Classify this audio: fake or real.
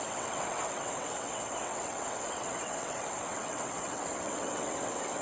fake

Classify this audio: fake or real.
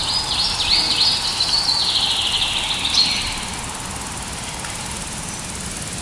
real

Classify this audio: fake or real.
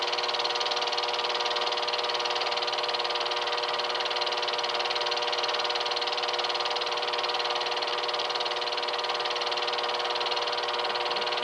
real